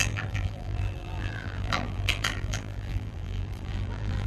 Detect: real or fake fake